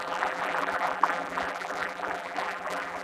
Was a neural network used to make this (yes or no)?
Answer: yes